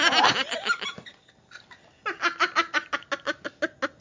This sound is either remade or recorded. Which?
recorded